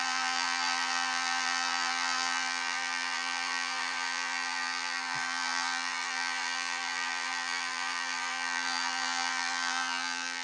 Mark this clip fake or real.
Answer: fake